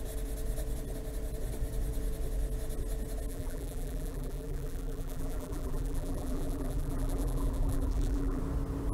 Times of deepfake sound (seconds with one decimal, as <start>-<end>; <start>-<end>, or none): 3.3-8.4